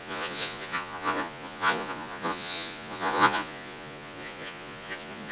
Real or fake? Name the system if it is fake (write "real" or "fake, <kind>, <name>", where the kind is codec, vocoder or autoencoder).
fake, vocoder, Vocos